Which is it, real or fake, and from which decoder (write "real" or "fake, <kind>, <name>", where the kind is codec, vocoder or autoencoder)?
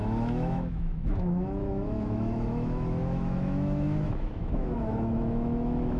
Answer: fake, autoencoder, DAC-VAE